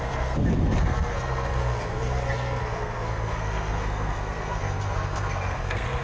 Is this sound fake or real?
fake